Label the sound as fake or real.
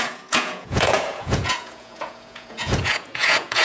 fake